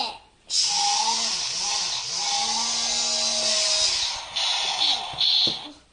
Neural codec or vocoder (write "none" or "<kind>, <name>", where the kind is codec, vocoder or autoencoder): none